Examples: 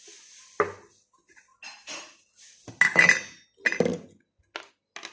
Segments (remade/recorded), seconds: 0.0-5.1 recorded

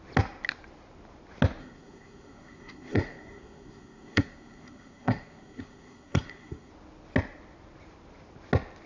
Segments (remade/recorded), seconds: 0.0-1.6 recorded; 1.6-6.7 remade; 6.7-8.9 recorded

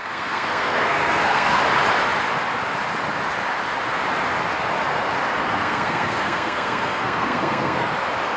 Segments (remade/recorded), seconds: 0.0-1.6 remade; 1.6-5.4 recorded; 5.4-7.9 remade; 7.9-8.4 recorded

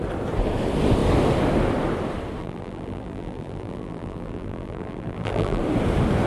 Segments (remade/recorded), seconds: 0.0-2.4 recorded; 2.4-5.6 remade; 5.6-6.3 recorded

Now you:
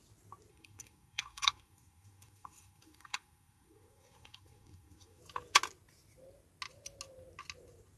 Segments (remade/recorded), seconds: 0.0-0.5 recorded; 0.5-5.2 remade; 5.2-8.0 recorded

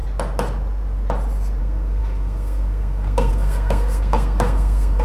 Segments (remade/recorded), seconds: 0.0-1.6 recorded; 1.6-5.0 remade

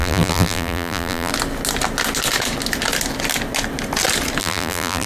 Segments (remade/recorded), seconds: 0.0-1.3 remade; 1.3-4.4 recorded; 4.4-5.1 remade

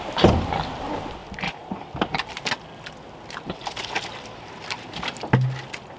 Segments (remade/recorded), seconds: 0.0-1.2 recorded; 1.2-4.8 remade; 4.8-6.0 recorded